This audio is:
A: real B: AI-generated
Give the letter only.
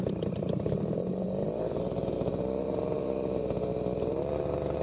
B